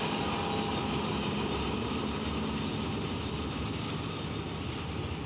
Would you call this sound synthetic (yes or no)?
no